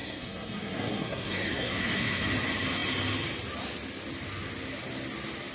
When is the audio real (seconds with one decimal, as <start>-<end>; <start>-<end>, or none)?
2.2-5.5